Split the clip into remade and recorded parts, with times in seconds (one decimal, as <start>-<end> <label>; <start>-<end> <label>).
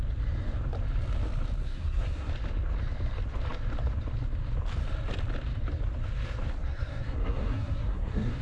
0.0-1.6 recorded; 1.6-2.3 remade; 2.3-6.7 recorded; 6.7-8.4 remade